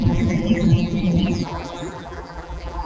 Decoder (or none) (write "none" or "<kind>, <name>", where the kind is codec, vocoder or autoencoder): vocoder, BigVGAN v2